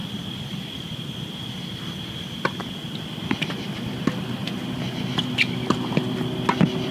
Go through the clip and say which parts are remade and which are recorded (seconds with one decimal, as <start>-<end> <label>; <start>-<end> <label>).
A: 0.0-6.9 recorded